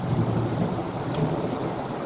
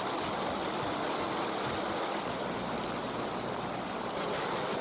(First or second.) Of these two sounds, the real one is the second